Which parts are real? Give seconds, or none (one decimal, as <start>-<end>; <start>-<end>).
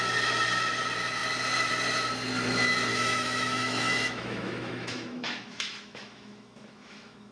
0.0-2.9